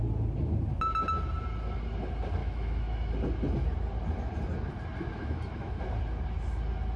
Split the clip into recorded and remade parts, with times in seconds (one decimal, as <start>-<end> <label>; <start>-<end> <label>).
0.0-2.4 recorded; 2.4-3.1 remade; 3.1-5.2 recorded; 5.2-5.8 remade; 5.8-7.0 recorded